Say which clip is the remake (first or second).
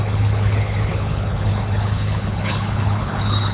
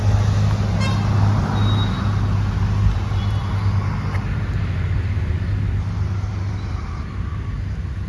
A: first